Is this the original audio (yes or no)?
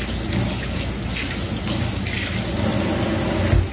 yes